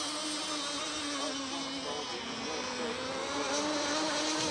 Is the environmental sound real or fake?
real